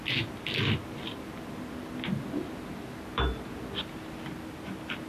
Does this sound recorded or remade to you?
recorded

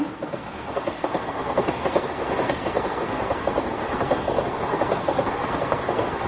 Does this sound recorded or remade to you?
remade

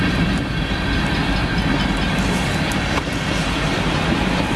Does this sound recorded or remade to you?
recorded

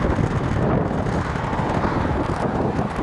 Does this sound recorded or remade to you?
recorded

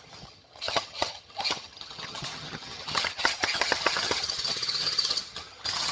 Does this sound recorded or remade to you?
remade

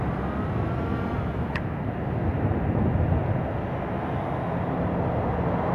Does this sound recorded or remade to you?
recorded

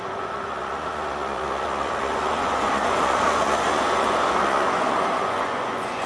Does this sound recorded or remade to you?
remade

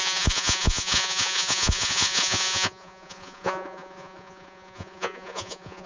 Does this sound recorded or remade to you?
remade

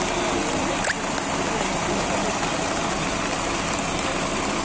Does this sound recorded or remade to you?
recorded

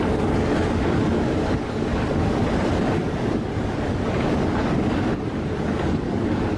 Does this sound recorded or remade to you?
remade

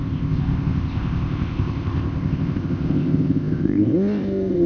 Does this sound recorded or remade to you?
remade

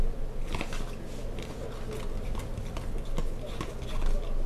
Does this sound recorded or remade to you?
recorded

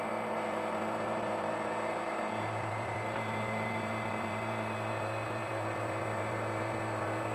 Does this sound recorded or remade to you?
remade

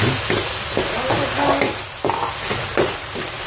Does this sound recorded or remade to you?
recorded